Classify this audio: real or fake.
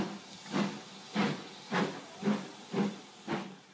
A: real